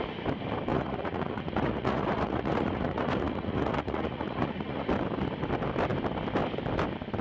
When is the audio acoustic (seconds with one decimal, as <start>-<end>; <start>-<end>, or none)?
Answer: 0.0-0.7; 4.9-7.2